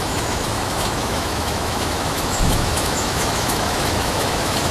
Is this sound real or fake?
fake